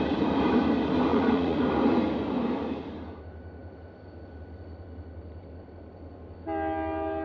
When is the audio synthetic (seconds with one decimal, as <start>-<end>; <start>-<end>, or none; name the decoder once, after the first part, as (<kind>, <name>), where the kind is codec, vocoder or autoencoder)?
1.1-1.6 (vocoder, Vocos)